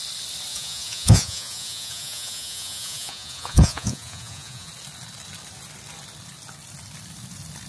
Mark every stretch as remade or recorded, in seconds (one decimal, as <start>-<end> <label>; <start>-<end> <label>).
0.0-0.5 recorded; 0.5-4.7 remade; 4.7-7.7 recorded

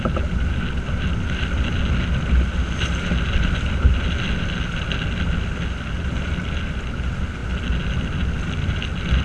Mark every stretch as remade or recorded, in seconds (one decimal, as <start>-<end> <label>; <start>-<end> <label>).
0.0-9.2 recorded

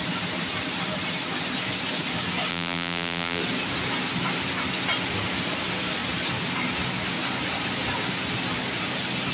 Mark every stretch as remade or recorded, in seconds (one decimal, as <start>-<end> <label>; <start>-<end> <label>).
0.0-2.5 recorded; 2.5-3.4 remade; 3.4-9.3 recorded

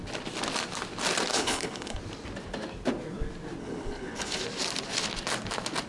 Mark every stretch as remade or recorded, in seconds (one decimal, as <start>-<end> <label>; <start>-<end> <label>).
0.0-1.3 recorded; 1.3-2.0 remade; 2.0-3.6 recorded; 3.6-4.4 remade; 4.4-5.9 recorded

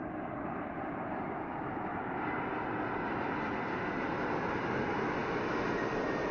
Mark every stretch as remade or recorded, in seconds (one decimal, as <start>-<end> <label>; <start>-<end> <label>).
0.0-6.3 recorded